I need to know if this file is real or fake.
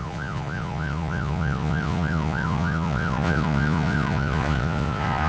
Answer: fake